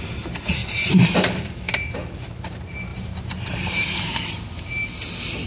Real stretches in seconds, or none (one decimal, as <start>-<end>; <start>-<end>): 0.0-0.6; 1.3-2.9; 4.2-5.5